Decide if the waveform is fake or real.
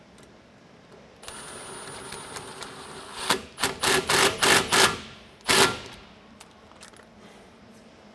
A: real